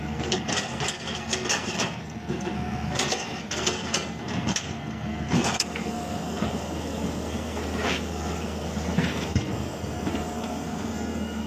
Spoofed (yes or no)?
yes